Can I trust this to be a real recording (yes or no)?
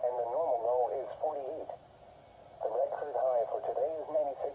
no